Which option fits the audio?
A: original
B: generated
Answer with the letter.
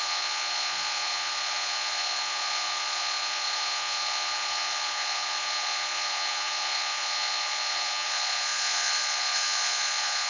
B